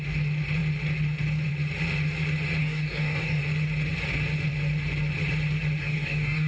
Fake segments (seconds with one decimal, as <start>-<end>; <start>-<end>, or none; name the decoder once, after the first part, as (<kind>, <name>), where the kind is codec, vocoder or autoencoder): 2.6-3.4 (codec, DAC); 5.8-6.5